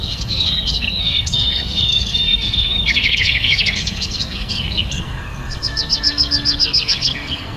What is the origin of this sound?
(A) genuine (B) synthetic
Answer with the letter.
B